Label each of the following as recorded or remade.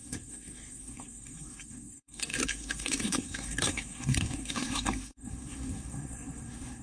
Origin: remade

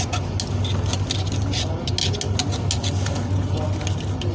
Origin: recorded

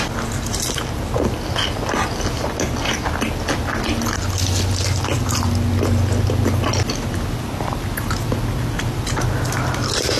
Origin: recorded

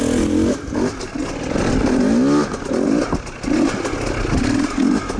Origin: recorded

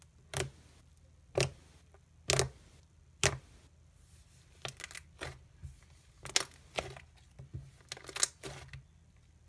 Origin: recorded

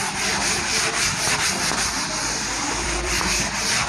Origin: remade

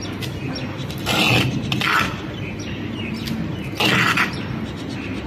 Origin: recorded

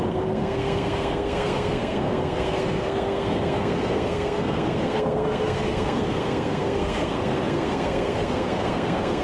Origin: remade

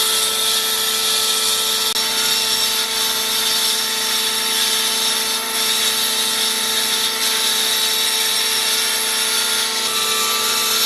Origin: recorded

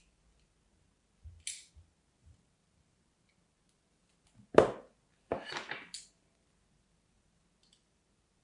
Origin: recorded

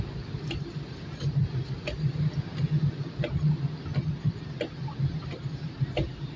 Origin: recorded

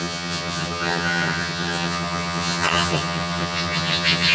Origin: remade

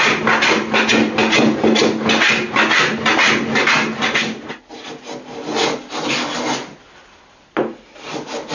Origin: recorded